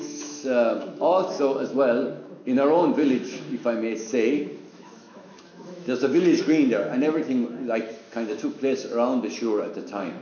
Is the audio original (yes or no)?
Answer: no